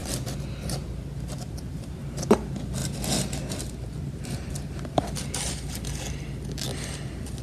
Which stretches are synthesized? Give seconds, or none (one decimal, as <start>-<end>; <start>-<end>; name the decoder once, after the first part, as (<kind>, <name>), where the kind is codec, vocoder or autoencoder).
none